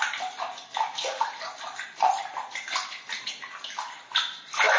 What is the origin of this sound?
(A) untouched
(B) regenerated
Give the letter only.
A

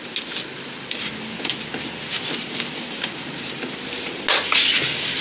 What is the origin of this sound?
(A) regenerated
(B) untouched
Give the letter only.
B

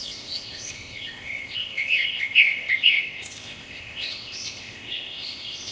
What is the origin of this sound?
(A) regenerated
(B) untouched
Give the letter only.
A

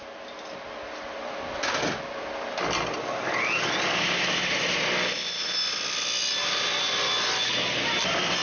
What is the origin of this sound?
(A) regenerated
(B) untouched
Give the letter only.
B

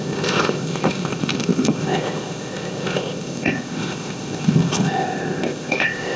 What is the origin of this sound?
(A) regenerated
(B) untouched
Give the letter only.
A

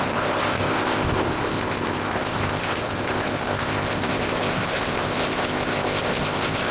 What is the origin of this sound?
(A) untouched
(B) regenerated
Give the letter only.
B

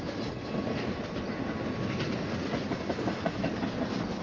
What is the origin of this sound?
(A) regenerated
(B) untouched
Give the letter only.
B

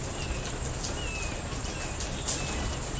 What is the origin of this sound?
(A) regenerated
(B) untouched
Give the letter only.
B